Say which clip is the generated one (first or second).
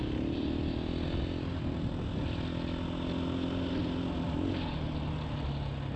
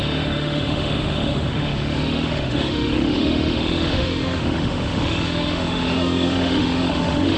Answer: second